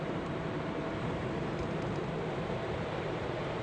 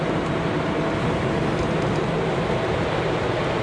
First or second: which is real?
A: second